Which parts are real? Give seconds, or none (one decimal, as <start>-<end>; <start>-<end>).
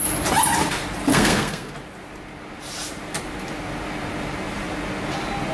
0.0-1.1; 1.7-5.5